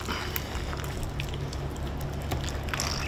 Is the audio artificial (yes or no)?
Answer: no